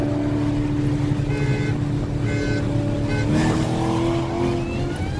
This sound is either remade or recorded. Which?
recorded